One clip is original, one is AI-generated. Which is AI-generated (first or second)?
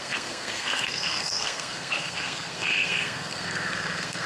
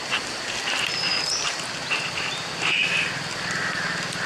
first